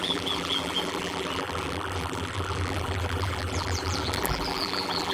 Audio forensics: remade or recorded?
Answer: remade